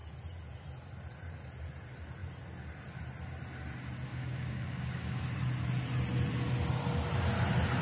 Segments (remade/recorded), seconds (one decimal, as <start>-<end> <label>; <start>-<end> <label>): 0.0-4.1 recorded; 4.1-5.2 remade; 5.2-7.8 recorded